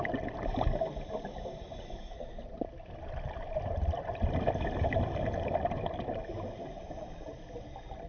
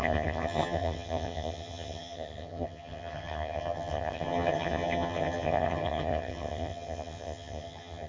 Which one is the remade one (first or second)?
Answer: second